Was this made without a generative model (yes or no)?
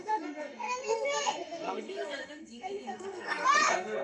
no